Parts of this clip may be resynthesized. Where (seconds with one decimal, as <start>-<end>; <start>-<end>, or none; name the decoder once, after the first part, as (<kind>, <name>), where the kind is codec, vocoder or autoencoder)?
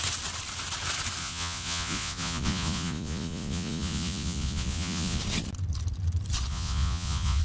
1.2-5.2 (vocoder, Vocos); 6.5-7.4